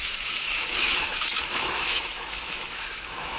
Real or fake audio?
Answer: fake